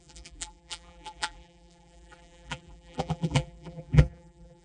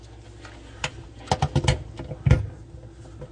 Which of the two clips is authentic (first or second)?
second